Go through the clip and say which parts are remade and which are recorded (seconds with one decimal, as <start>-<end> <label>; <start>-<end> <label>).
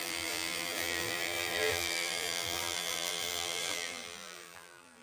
0.0-5.0 remade